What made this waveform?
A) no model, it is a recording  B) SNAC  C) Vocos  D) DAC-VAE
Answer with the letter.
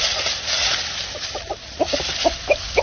A